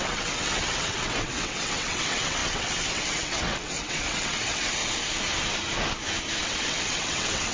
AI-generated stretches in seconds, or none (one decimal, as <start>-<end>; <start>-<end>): 0.0-4.8; 6.4-7.5